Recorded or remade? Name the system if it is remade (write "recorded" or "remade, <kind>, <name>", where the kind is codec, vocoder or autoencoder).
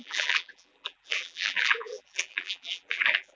remade, vocoder, BigVGAN v2